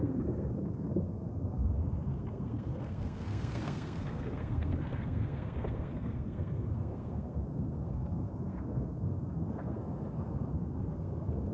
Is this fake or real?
fake